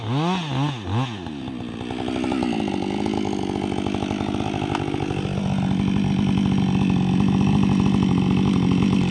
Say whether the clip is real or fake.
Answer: real